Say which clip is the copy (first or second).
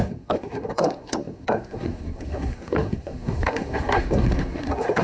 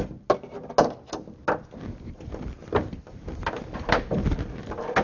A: first